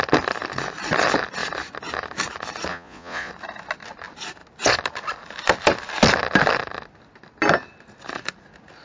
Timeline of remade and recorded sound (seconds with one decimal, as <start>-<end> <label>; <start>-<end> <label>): 0.0-2.7 recorded; 2.7-3.3 remade; 3.3-8.8 recorded